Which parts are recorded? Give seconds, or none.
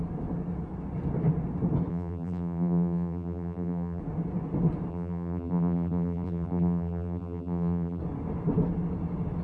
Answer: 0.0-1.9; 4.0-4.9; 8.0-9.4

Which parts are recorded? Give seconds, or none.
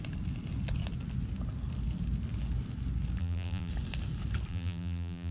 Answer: 0.0-3.2; 3.7-4.5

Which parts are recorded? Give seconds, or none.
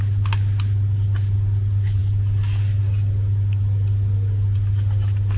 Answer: 0.0-5.4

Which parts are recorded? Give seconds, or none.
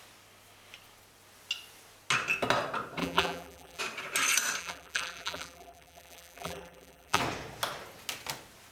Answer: 0.0-3.0; 3.8-4.6; 7.2-8.7